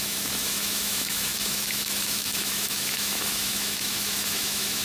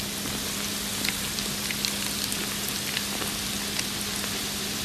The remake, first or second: first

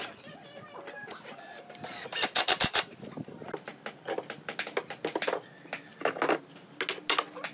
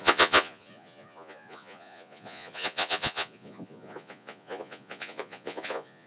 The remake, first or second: second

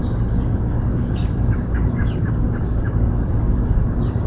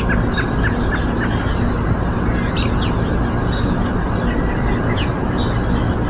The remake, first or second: first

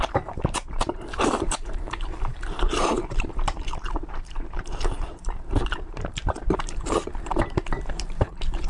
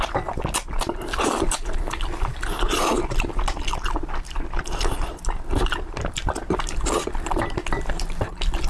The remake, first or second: first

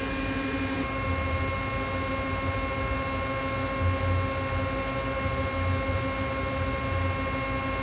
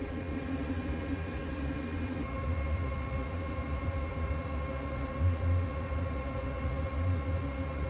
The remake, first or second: second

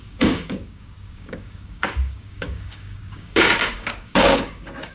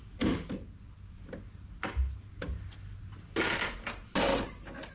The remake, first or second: first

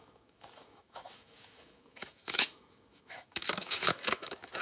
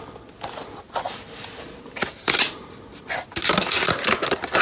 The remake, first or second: first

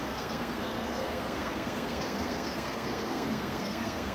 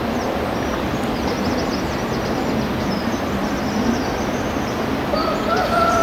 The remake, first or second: first